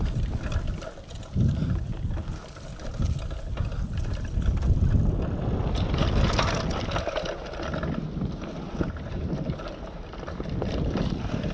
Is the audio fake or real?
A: real